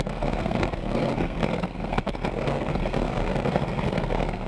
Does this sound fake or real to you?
fake